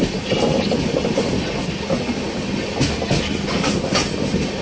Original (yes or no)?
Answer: yes